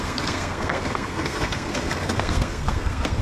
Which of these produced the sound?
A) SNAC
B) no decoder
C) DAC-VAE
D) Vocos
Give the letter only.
A